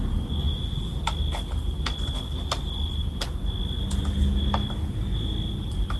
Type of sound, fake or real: real